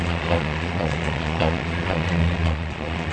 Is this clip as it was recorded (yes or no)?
no